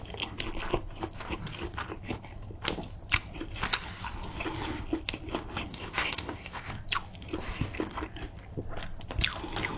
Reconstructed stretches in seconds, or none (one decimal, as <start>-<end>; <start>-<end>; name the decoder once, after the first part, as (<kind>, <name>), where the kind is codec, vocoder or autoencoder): 5.7-6.7 (codec, ZipCodec)